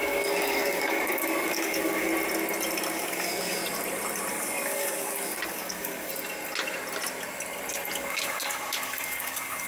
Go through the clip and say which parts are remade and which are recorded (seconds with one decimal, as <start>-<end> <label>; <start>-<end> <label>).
0.0-2.1 remade; 2.1-2.9 recorded; 2.9-3.6 remade; 3.6-4.3 recorded; 4.3-6.1 remade; 6.1-7.9 recorded; 7.9-9.7 remade